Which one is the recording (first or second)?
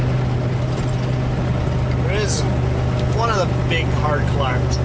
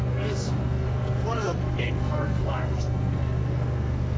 first